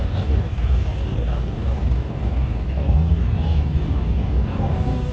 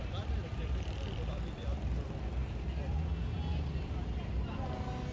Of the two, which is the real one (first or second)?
second